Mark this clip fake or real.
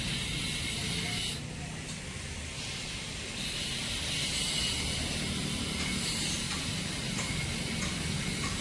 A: real